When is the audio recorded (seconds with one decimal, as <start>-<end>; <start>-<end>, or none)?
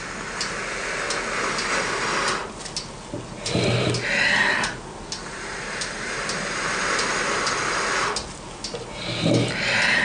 0.0-10.0